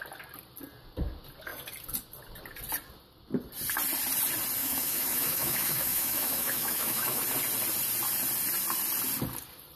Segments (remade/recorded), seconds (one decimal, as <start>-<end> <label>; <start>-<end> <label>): 0.0-4.6 recorded; 4.6-7.2 remade; 7.2-9.8 recorded